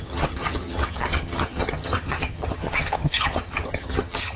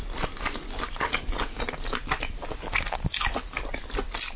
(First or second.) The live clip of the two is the second